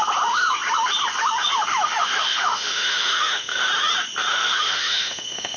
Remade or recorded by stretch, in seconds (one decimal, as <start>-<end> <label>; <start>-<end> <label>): 0.0-1.7 recorded; 1.7-3.7 remade; 3.7-4.3 recorded; 4.3-5.6 remade